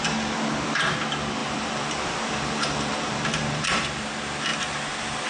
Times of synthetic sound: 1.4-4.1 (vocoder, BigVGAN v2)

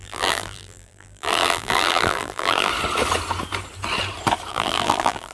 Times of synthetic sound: 0.0-2.7 (vocoder, BigVGAN v2); 4.5-5.3

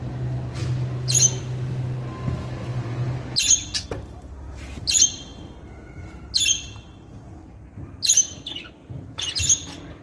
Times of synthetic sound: 8.8-9.3 (vocoder, BigVGAN v2)

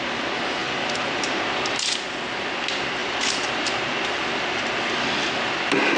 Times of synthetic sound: 0.6-1.4 (vocoder, BigVGAN v2); 3.0-5.1

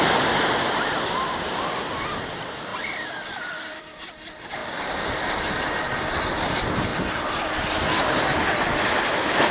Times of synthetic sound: 4.6-6.3 (vocoder, BigVGAN v2)

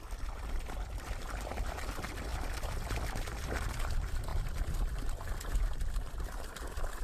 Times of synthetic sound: 0.0-2.3 (vocoder, BigVGAN v2); 3.1-4.3

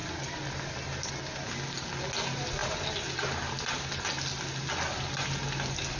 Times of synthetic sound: none

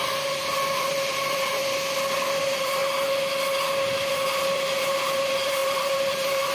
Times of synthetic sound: 0.0-1.6 (vocoder, BigVGAN v2); 2.4-2.8; 4.0-6.5